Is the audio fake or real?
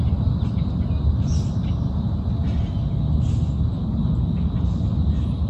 real